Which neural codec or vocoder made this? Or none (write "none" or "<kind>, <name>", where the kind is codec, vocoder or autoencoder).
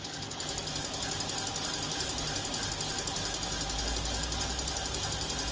none